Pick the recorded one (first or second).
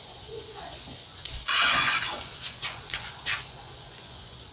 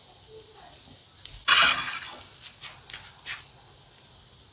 second